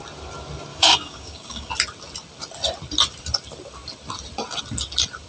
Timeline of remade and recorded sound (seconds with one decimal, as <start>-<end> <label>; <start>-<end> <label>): 0.0-0.7 recorded; 0.7-1.7 remade; 1.7-5.3 recorded